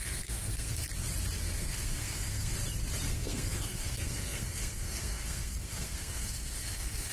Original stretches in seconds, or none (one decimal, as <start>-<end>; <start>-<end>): 0.8-1.4; 2.5-3.1